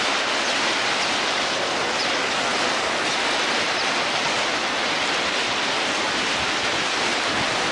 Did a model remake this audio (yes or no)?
no